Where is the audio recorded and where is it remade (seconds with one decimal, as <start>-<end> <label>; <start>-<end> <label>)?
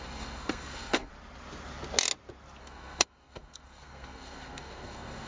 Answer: 0.0-1.1 remade; 1.1-2.6 recorded; 2.6-5.3 remade